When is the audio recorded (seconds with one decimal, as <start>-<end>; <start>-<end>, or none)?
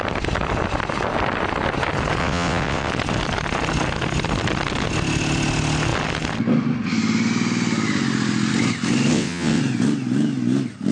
0.0-2.2; 2.9-9.1; 9.6-10.9